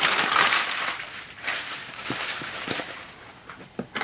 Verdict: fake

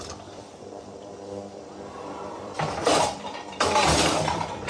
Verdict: fake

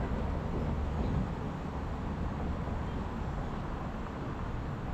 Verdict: real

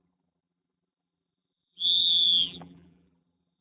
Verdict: fake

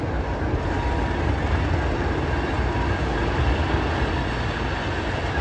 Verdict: real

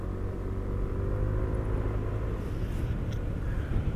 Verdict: real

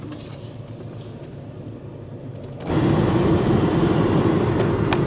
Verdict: real